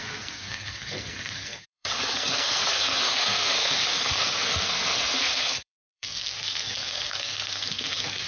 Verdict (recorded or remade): remade